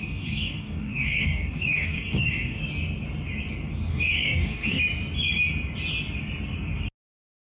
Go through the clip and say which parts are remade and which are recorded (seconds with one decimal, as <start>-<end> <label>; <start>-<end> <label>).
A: 0.0-2.6 remade; 2.6-3.9 recorded; 3.9-4.8 remade; 4.8-7.6 recorded